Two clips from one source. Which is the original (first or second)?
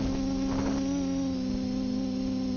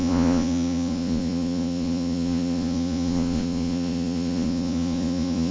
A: first